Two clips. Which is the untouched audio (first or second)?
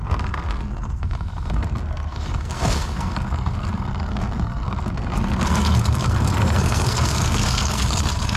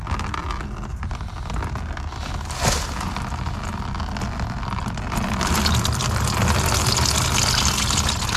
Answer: second